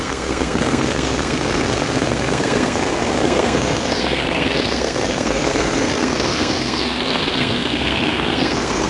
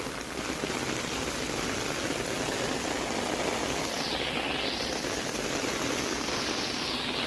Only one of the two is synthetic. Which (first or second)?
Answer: first